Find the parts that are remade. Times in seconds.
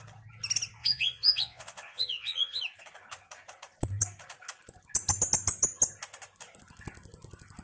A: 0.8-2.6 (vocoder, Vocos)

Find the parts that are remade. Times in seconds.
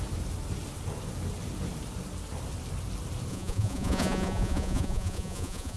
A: 3.3-5.8 (vocoder, Vocos)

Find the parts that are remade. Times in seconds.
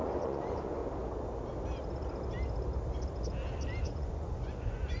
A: 0.0-0.8 (vocoder, Vocos); 3.8-5.0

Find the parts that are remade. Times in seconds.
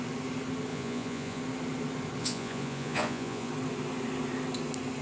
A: 0.7-1.4 (vocoder, Vocos); 2.2-3.5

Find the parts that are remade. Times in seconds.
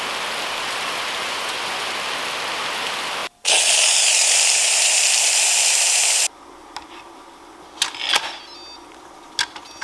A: 1.2-1.9 (vocoder, Vocos)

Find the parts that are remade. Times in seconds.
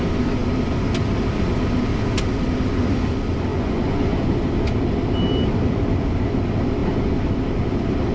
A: 3.5-4.3 (vocoder, Vocos)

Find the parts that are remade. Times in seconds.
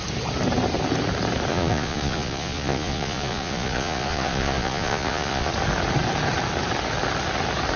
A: 1.5-5.5 (vocoder, Vocos)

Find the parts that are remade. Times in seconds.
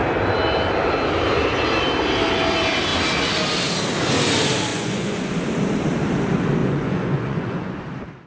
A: 4.7-5.3 (vocoder, Vocos); 6.6-7.7